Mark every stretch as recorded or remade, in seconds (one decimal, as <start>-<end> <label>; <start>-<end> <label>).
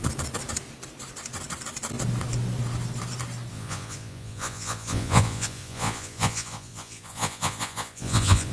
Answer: 0.0-3.5 recorded; 3.5-8.5 remade